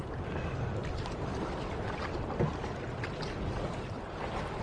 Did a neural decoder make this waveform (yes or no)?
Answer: no